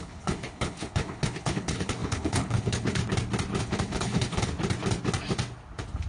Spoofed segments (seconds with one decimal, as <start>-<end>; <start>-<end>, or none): 0.0-3.0; 3.6-4.5